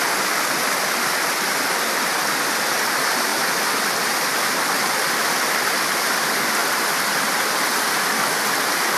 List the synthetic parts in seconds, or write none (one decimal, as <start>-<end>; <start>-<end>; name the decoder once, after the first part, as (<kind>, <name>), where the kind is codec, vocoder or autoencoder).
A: none